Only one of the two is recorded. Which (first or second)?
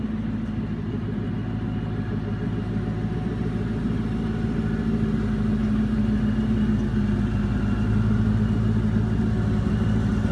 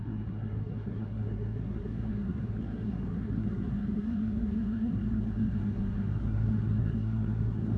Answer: first